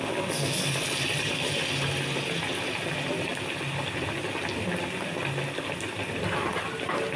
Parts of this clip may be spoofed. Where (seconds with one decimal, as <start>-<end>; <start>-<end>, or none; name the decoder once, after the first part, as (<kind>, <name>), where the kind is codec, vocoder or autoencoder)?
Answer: none